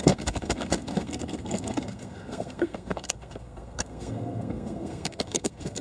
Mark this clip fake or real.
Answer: fake